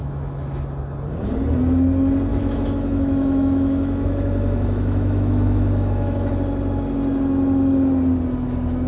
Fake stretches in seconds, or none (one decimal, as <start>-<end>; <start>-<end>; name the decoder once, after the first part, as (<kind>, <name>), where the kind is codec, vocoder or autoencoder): 0.0-0.6 (autoencoder, DAC-VAE); 2.3-6.3